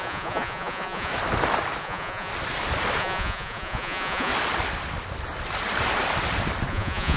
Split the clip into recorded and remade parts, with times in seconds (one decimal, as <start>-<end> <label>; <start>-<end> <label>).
0.0-1.1 remade; 1.1-1.8 recorded; 1.8-2.3 remade; 2.3-3.0 recorded; 3.0-4.3 remade; 4.3-6.7 recorded; 6.7-7.2 remade